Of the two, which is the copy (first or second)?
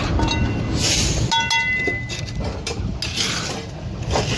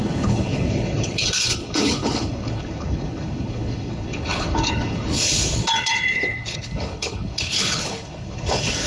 second